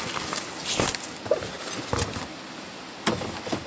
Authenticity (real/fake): real